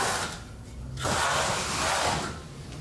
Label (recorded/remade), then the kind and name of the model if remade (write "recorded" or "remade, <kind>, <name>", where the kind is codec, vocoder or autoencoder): recorded